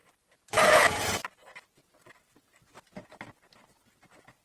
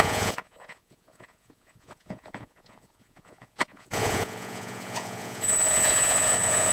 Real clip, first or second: first